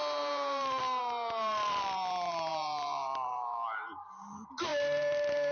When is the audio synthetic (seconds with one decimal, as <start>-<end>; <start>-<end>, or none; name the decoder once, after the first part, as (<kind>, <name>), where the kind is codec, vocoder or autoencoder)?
0.0-5.5 (vocoder, BigVGAN v2)